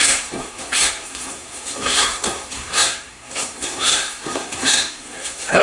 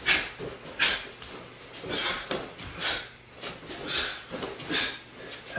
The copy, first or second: first